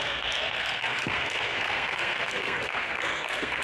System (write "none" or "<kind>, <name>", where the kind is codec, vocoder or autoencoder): codec, SNAC